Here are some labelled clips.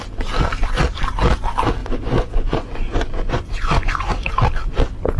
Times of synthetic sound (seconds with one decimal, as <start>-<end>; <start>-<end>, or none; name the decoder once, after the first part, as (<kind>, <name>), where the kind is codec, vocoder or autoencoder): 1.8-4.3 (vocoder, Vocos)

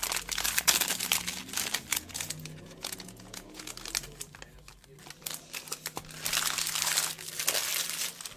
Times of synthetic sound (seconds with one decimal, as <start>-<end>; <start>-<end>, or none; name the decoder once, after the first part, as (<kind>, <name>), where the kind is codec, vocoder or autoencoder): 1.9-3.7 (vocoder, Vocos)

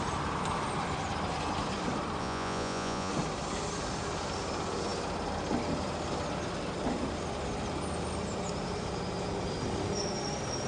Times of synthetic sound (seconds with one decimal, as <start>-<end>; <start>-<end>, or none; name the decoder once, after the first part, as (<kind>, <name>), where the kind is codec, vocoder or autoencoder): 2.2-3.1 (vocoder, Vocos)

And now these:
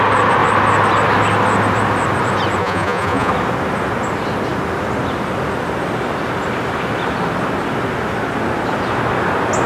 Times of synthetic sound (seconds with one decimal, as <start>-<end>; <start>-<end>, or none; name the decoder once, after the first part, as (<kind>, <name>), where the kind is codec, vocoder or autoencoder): 2.6-3.3 (vocoder, Vocos)